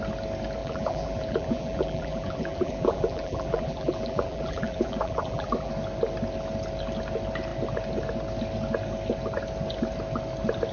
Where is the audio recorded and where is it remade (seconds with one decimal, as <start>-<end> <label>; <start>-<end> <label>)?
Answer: 0.0-0.6 recorded; 0.6-5.7 remade; 5.7-10.7 recorded